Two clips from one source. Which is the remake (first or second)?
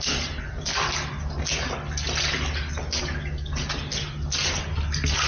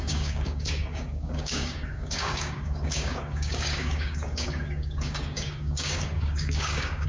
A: second